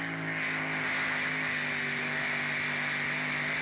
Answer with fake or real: real